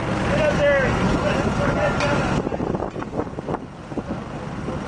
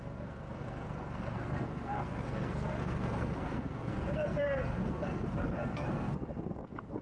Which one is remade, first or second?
second